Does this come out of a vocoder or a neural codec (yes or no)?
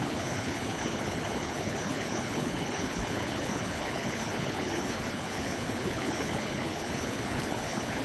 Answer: yes